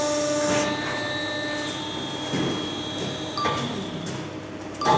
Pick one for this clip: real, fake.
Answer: real